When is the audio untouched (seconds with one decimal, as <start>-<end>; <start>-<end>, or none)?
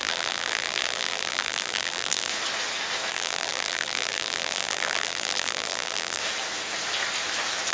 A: 2.3-3.1; 6.2-7.7